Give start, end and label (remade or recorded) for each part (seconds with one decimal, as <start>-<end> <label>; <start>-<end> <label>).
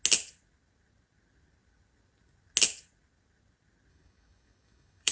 0.0-3.9 recorded; 3.9-5.1 remade